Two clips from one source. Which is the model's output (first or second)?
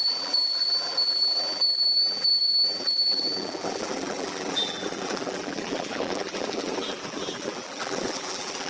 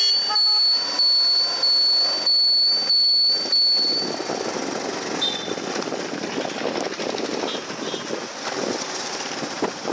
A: first